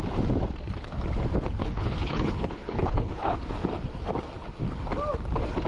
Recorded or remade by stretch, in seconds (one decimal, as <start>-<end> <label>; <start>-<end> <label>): 0.0-1.6 recorded; 1.6-3.5 remade; 3.5-5.7 recorded